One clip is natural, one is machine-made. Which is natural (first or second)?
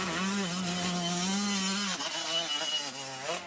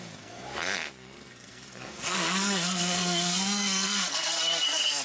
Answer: first